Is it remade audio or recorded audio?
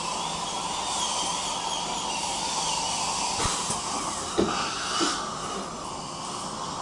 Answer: recorded